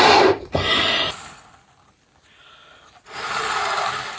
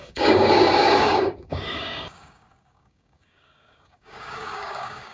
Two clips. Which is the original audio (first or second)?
first